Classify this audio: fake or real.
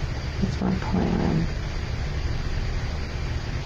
real